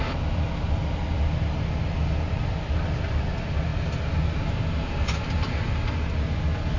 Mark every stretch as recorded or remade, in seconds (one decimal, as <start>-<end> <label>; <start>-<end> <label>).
0.0-6.8 recorded